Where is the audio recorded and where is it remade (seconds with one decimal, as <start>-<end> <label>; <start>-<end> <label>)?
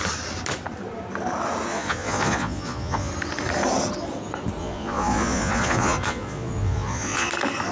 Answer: 0.0-1.7 recorded; 1.7-3.1 remade; 3.1-4.6 recorded; 4.6-7.3 remade; 7.3-7.7 recorded